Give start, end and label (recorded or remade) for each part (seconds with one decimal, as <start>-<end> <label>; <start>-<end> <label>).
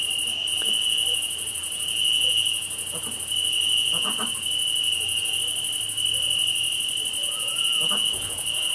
0.0-0.5 recorded; 0.5-5.4 remade; 5.4-7.2 recorded; 7.2-8.7 remade